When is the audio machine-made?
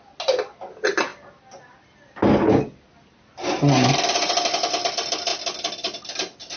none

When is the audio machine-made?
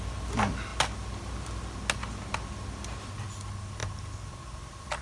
none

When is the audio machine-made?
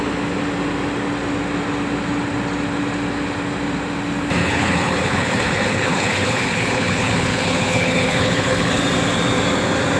4.4-8.8 (codec, HILCodec)